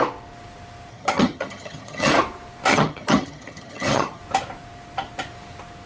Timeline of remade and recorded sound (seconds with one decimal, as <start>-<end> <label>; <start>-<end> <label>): 0.0-0.9 recorded; 0.9-2.1 remade; 2.1-2.7 recorded; 2.7-4.2 remade; 4.2-5.9 recorded